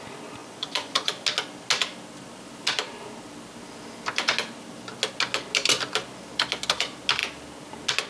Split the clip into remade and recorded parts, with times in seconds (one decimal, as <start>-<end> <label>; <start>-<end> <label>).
0.0-0.4 recorded; 0.4-1.1 remade; 1.1-8.1 recorded